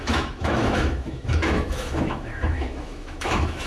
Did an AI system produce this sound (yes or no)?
yes